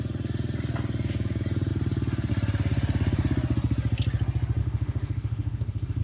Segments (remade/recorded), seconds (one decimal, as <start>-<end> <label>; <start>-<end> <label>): 0.0-4.6 recorded; 4.6-6.0 remade